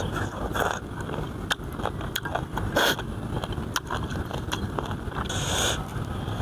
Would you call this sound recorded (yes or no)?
yes